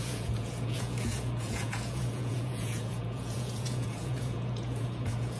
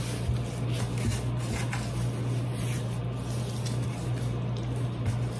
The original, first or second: second